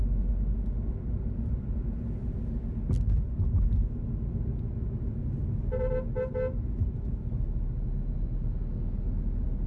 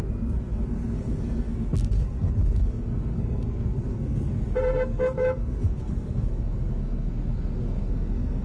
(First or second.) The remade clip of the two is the second